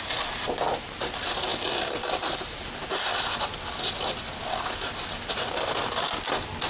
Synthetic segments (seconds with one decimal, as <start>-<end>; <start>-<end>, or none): none